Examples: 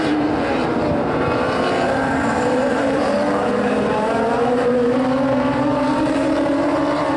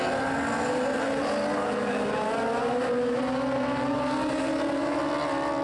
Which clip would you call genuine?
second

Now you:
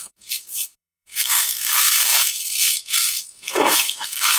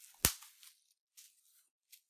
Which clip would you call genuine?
second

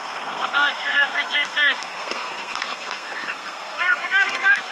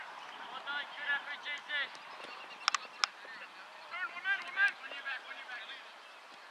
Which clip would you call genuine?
second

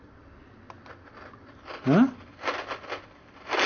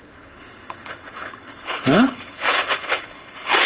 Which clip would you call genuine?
first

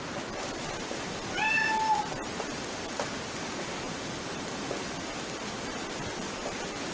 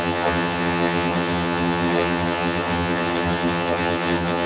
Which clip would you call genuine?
first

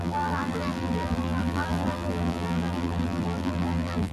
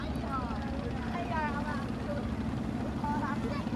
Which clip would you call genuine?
second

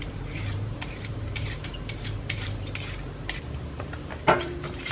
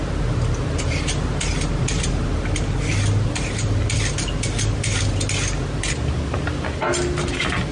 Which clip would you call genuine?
second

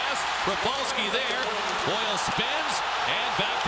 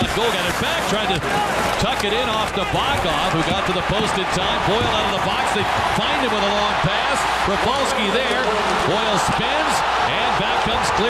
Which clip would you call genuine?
second